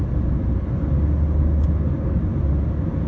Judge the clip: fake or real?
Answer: real